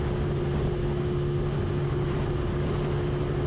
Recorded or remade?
recorded